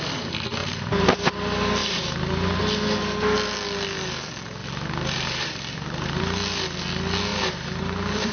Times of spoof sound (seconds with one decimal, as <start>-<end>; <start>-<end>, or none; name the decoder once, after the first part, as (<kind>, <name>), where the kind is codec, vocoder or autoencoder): 0.6-1.2 (vocoder, BigVGAN v2); 1.8-2.6; 4.6-6.2; 7.3-8.3